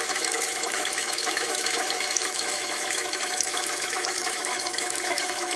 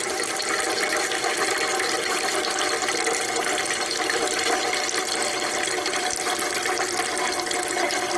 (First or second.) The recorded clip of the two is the second